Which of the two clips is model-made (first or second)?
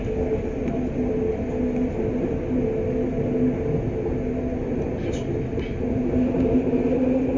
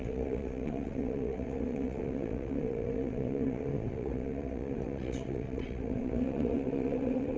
second